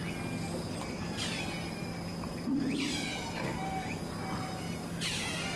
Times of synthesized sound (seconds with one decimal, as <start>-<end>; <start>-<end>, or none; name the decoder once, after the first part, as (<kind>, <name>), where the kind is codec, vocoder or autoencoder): none